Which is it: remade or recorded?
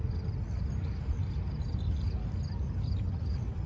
recorded